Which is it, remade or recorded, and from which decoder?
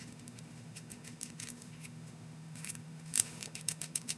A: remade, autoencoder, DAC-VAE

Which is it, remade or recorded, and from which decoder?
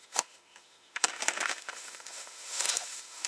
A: remade, autoencoder, DAC-VAE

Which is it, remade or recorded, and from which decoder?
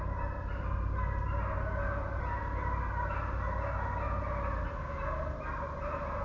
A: recorded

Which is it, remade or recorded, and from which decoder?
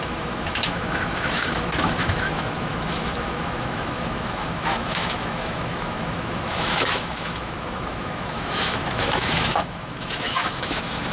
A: remade, autoencoder, DAC-VAE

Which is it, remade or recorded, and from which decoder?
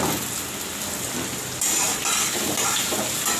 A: recorded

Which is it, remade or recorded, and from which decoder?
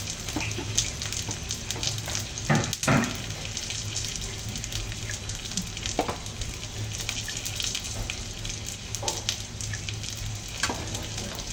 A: recorded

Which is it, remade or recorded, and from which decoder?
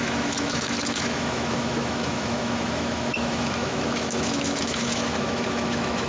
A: remade, autoencoder, DAC-VAE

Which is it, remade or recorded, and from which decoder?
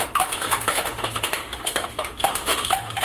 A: remade, autoencoder, DAC-VAE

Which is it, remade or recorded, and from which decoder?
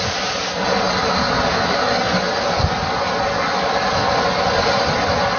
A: recorded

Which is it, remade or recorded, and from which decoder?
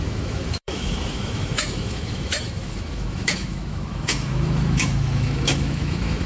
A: remade, autoencoder, DAC-VAE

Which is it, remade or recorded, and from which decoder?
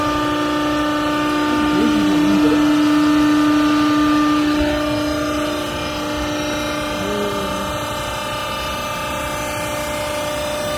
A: recorded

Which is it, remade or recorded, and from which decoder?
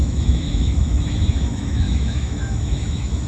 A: remade, autoencoder, DAC-VAE